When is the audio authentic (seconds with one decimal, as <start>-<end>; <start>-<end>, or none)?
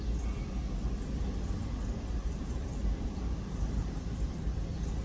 0.0-2.2; 4.5-5.0